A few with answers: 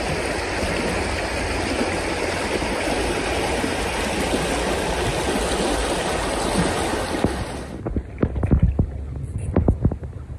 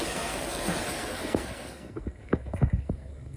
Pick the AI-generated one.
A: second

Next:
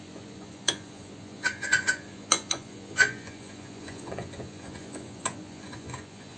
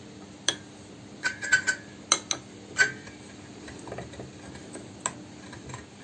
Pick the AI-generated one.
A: first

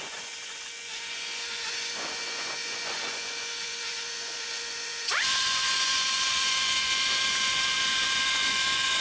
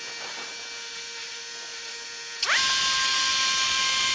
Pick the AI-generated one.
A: first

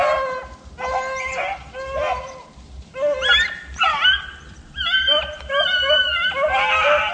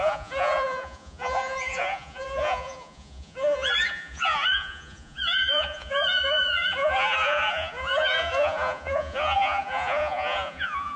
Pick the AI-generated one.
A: second